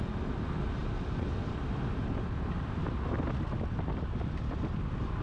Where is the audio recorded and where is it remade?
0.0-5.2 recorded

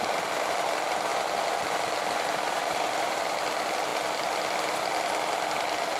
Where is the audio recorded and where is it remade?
0.0-1.1 recorded; 1.1-3.3 remade; 3.3-6.0 recorded

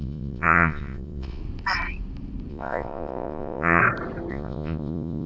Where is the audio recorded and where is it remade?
0.0-1.4 remade; 1.4-2.5 recorded; 2.5-3.8 remade; 3.8-4.3 recorded; 4.3-5.3 remade

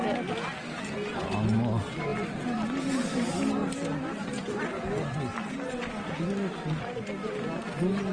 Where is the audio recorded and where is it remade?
0.0-8.1 recorded